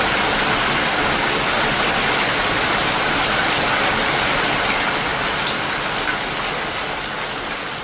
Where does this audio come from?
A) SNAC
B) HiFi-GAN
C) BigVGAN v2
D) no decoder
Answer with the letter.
D